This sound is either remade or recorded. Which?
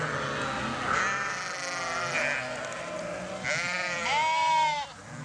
recorded